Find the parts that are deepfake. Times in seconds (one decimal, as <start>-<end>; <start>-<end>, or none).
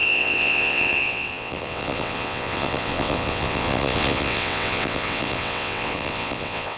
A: 0.0-6.8